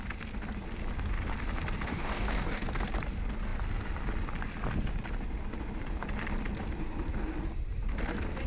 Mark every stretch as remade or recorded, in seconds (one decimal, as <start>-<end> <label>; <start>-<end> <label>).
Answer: 0.0-1.9 recorded; 1.9-2.6 remade; 2.6-8.5 recorded